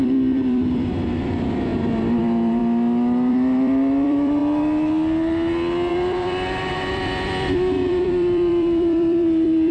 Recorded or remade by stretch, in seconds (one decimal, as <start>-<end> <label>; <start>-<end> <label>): 0.0-2.6 remade; 2.6-3.3 recorded; 3.3-4.4 remade; 4.4-5.9 recorded; 5.9-9.7 remade